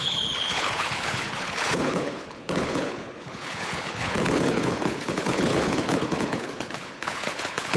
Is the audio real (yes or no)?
no